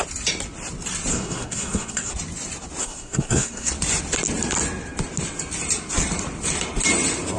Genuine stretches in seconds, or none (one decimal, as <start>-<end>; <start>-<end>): 0.0-1.1; 2.1-2.8; 3.7-7.4